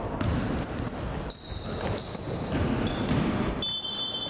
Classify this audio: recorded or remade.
recorded